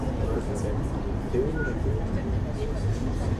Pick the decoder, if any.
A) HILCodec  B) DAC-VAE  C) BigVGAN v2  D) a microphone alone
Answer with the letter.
C